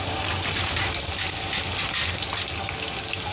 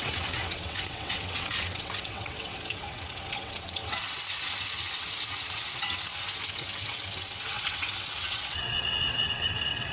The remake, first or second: second